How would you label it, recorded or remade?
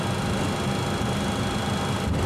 recorded